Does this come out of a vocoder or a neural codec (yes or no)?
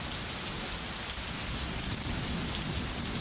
no